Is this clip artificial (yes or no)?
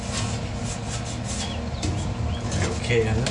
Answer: no